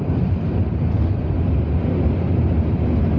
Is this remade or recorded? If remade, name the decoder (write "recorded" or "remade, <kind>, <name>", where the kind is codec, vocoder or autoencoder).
recorded